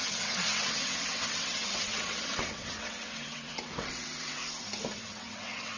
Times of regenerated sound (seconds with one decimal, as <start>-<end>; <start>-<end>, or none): 0.0-4.4; 5.0-5.8